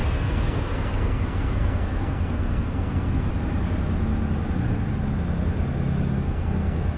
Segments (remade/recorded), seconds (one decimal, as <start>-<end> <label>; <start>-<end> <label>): 0.0-3.3 remade; 3.3-6.1 recorded; 6.1-7.0 remade